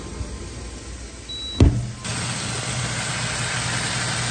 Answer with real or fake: real